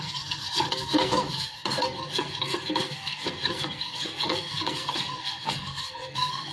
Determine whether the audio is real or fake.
fake